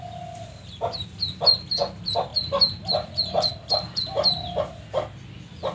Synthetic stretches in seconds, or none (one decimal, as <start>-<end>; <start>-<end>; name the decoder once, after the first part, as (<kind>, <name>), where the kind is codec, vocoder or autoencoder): none